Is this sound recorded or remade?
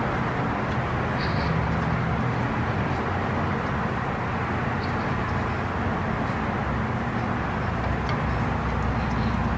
recorded